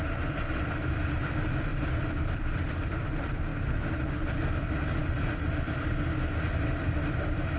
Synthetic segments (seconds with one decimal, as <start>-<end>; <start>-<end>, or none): none